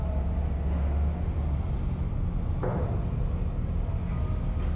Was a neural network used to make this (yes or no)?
no